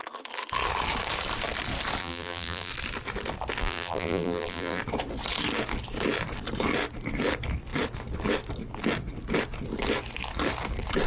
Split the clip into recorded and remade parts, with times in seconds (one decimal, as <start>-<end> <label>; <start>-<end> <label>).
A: 0.0-2.0 recorded; 2.0-2.7 remade; 2.7-3.6 recorded; 3.6-4.8 remade; 4.8-11.1 recorded